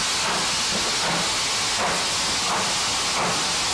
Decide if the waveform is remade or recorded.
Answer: recorded